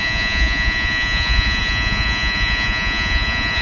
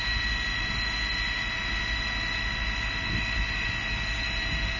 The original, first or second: second